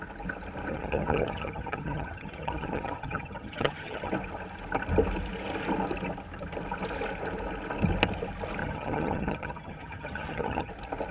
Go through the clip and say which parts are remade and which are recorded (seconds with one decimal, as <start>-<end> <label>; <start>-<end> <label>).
0.0-0.7 recorded; 0.7-4.1 remade; 4.1-8.6 recorded; 8.6-10.7 remade; 10.7-11.1 recorded